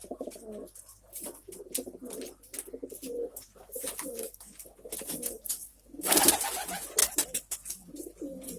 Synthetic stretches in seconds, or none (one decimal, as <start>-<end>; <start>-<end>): 3.3-6.3; 7.0-7.9